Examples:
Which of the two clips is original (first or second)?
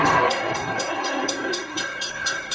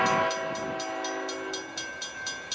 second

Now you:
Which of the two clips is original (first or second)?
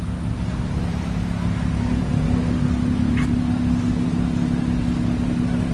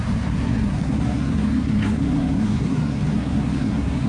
first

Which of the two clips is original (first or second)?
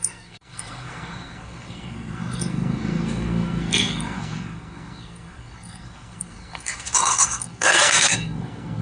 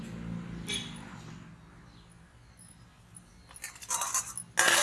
second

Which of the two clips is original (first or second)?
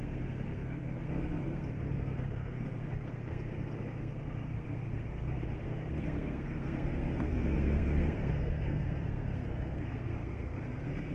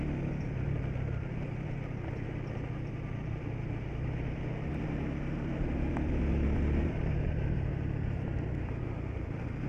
second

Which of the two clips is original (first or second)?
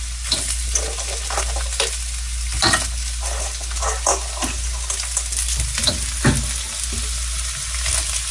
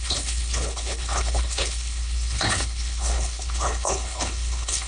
first